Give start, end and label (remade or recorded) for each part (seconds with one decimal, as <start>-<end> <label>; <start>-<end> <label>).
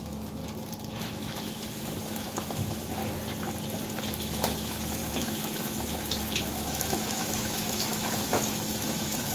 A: 0.0-0.4 remade; 0.4-1.0 recorded; 1.0-3.0 remade; 3.0-4.2 recorded; 4.2-9.3 remade